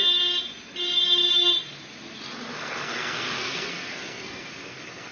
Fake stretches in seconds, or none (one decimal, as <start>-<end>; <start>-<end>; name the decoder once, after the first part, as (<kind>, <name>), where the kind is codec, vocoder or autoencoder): 2.5-5.1 (codec, SNAC)